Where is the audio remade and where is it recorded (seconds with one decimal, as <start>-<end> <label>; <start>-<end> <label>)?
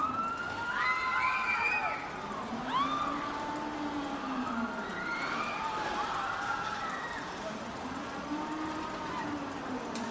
0.0-7.7 recorded; 7.7-8.3 remade; 8.3-10.1 recorded